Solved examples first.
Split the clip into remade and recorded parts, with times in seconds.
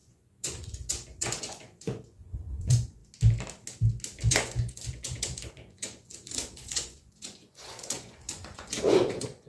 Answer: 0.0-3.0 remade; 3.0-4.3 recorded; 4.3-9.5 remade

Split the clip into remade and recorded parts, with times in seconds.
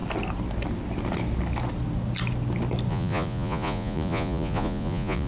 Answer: 0.0-2.9 recorded; 2.9-5.3 remade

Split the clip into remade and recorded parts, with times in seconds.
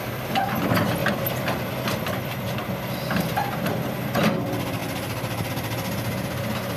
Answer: 0.0-6.8 recorded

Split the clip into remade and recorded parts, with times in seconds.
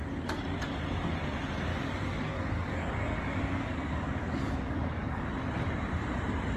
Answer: 0.0-1.7 recorded; 1.7-5.3 remade; 5.3-6.6 recorded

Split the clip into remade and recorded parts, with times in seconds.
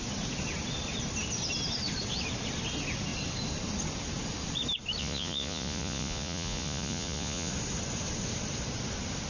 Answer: 0.0-5.0 recorded; 5.0-7.5 remade; 7.5-9.3 recorded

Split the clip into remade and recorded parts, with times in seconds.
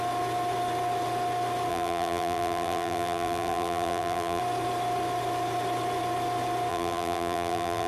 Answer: 0.0-1.7 recorded; 1.7-4.4 remade; 4.4-6.7 recorded; 6.7-7.9 remade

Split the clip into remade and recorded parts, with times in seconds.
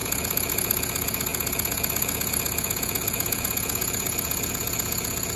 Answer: 0.0-5.4 remade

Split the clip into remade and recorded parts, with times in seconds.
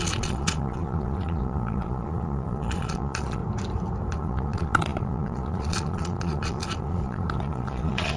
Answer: 0.0-3.4 remade; 3.4-4.1 recorded; 4.1-8.2 remade